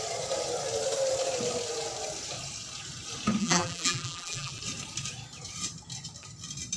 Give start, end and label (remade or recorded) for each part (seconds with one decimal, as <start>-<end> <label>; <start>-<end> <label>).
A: 0.0-3.4 recorded; 3.4-4.5 remade; 4.5-6.8 recorded